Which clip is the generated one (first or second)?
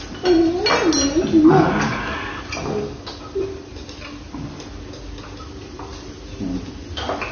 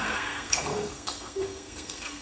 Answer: second